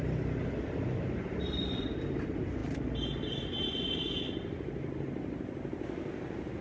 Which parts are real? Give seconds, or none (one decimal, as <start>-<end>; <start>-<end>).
0.0-6.6